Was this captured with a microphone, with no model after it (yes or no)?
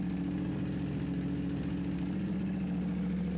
yes